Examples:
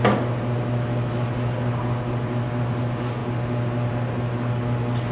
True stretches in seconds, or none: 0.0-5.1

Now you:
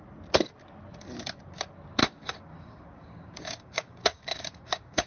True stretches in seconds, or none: 0.0-2.0

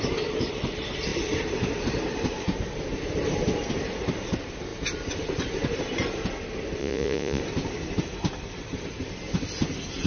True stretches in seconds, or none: 0.0-6.8; 7.4-10.1

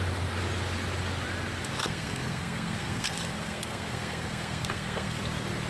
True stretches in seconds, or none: 0.0-1.8; 5.2-5.7

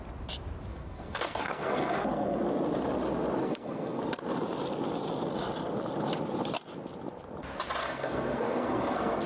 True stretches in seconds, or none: 0.0-0.7; 2.4-3.4; 4.0-7.8

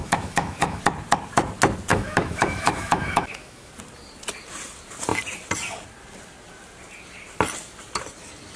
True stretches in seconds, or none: 0.8-1.9; 3.7-8.6

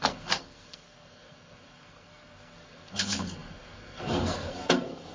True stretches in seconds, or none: none

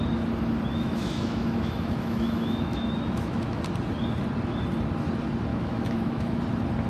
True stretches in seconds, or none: 0.0-0.7; 3.6-5.5; 6.4-6.9